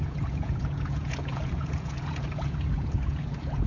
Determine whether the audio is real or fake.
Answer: fake